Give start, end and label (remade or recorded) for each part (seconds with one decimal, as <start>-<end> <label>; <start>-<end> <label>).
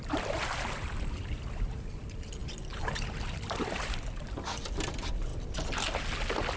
0.0-5.3 remade; 5.3-6.6 recorded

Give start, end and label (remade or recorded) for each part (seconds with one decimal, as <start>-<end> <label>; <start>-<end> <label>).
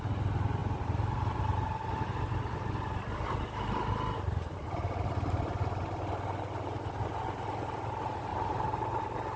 0.0-8.3 recorded; 8.3-9.0 remade; 9.0-9.4 recorded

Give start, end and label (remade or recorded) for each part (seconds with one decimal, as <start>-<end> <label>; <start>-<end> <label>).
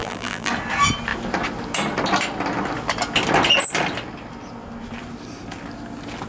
0.0-0.5 remade; 0.5-6.3 recorded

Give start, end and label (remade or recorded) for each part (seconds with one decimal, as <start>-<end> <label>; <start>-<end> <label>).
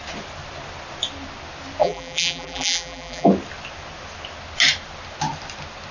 0.0-1.8 recorded; 1.8-3.3 remade; 3.3-5.9 recorded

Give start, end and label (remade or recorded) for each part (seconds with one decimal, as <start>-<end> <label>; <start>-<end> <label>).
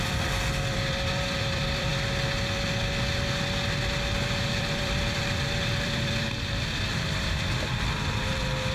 0.0-1.9 remade; 1.9-4.3 recorded; 4.3-8.7 remade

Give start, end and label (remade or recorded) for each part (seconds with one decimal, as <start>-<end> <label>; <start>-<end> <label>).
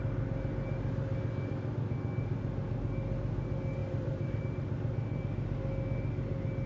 0.0-3.8 recorded; 3.8-4.4 remade; 4.4-6.7 recorded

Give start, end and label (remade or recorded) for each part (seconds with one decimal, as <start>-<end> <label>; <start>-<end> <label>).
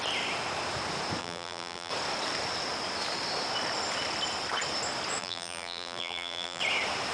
0.0-1.2 recorded; 1.2-1.9 remade; 1.9-5.2 recorded; 5.2-6.6 remade; 6.6-7.1 recorded